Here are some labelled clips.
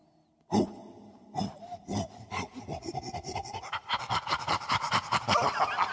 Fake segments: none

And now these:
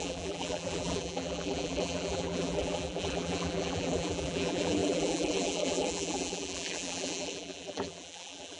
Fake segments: 0.0-8.6 (vocoder, BigVGAN v2)

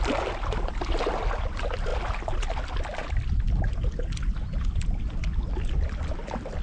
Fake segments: 0.7-1.3 (vocoder, BigVGAN v2)

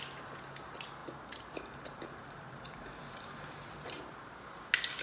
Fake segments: 1.0-4.0 (vocoder, BigVGAN v2)

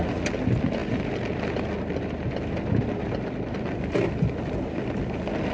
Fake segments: 0.8-2.8 (vocoder, BigVGAN v2)

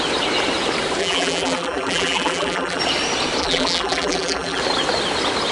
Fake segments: 1.0-2.8 (vocoder, BigVGAN v2); 3.4-4.6

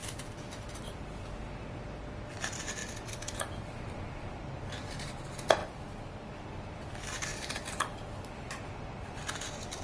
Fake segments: 0.0-1.3 (vocoder, BigVGAN v2); 5.6-6.3; 7.3-8.0

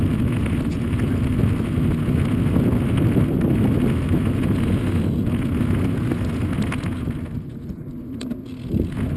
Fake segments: 7.5-8.2 (vocoder, BigVGAN v2)